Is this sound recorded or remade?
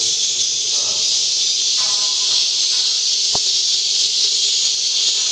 recorded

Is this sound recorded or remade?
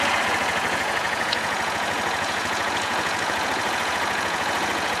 remade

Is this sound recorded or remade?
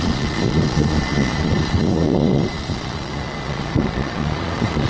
remade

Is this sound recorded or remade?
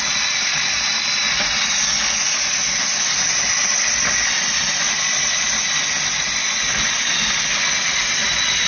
recorded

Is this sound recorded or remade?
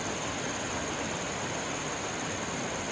recorded